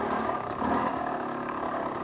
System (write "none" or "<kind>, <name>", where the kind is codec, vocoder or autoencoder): codec, DAC